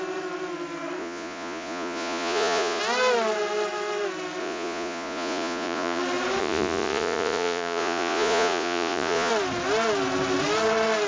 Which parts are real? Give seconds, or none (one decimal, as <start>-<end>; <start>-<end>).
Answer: 0.0-1.0; 2.8-4.4; 6.0-6.4; 9.3-11.1